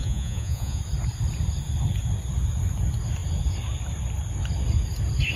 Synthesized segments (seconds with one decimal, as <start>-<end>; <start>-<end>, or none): 0.0-0.8